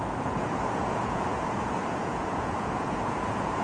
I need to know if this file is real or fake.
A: fake